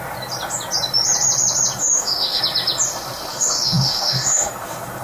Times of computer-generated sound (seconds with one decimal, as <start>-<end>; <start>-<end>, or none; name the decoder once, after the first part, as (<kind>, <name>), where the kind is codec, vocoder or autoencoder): 1.8-2.4 (autoencoder, DAC-VAE); 3.3-4.5